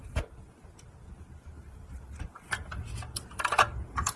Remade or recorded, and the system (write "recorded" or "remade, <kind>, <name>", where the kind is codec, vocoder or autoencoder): recorded